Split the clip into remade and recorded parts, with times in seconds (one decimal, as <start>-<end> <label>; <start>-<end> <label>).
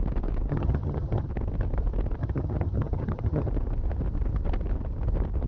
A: 0.0-0.5 recorded; 0.5-1.3 remade; 1.3-2.2 recorded; 2.2-3.5 remade; 3.5-5.5 recorded